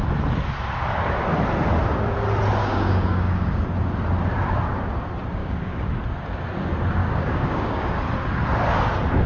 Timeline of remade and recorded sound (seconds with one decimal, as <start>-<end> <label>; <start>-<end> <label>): 0.0-2.6 recorded; 2.6-3.6 remade; 3.6-5.4 recorded; 5.4-5.9 remade; 5.9-7.0 recorded; 7.0-8.0 remade; 8.0-9.3 recorded